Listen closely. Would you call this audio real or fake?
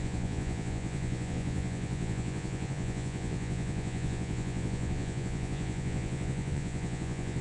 fake